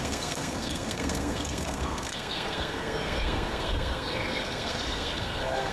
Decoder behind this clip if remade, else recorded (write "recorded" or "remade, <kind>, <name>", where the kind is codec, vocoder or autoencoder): remade, codec, SNAC